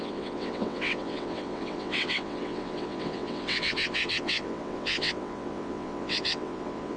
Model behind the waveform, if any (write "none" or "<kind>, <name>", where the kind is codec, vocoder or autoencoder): vocoder, WaveNeXt